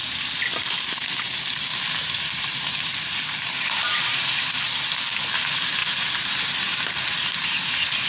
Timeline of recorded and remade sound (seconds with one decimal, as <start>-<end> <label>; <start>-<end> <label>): 0.0-1.7 recorded; 1.7-4.6 remade; 4.6-5.8 recorded; 5.8-6.4 remade; 6.4-8.1 recorded